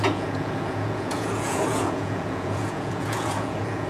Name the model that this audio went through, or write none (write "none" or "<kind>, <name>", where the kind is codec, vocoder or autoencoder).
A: vocoder, Vocos